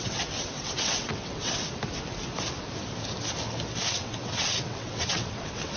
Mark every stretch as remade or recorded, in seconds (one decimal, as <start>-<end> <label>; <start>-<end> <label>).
0.0-1.6 remade; 1.6-3.9 recorded; 3.9-5.8 remade